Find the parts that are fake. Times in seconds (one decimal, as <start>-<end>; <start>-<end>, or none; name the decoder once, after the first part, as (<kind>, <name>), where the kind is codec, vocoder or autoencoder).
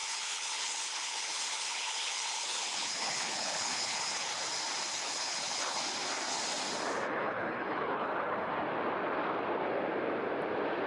0.0-4.4 (codec, HILCodec); 4.9-5.8; 7.1-8.5